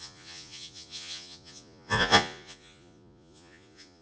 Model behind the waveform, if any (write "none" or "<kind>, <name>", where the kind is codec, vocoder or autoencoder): vocoder, Vocos